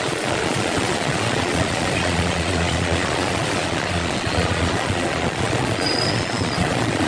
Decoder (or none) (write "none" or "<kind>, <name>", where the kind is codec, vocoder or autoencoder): vocoder, Vocos